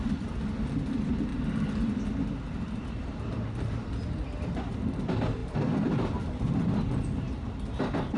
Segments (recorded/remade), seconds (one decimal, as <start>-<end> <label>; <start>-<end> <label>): 0.0-8.2 recorded